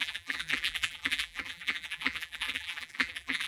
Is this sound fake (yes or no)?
yes